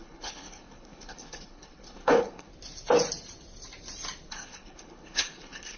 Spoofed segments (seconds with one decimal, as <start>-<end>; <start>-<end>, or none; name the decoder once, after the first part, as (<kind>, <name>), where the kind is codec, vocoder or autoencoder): 0.0-2.5 (codec, HILCodec); 4.3-5.8